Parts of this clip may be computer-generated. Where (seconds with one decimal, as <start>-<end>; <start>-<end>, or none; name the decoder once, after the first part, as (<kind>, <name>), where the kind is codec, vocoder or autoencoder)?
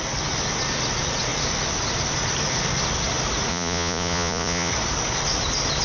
3.5-4.7 (vocoder, Vocos)